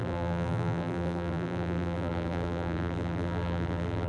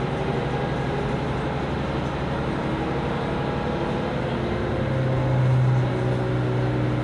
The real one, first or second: second